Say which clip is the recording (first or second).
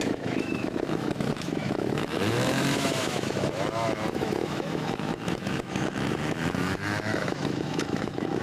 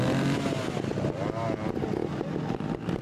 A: second